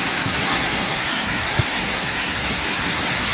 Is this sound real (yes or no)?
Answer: no